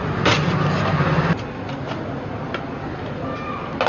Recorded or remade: recorded